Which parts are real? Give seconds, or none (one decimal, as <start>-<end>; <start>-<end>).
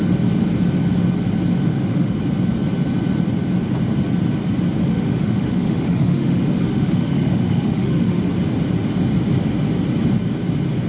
0.0-1.7; 2.2-4.8; 8.2-10.9